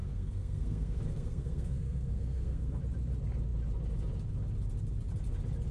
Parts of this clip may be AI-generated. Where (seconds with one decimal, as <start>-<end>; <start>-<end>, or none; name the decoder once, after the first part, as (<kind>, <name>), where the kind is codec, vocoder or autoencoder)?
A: 0.0-2.8 (codec, SNAC)